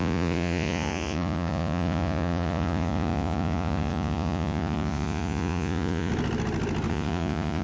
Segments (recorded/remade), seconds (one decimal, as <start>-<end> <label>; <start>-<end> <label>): 0.0-6.1 remade; 6.1-6.9 recorded; 6.9-7.6 remade